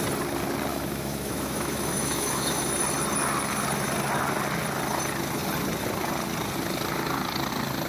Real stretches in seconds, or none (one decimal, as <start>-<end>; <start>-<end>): 0.0-0.7; 2.7-7.9